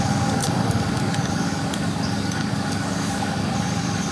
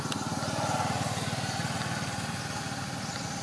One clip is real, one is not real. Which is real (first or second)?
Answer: second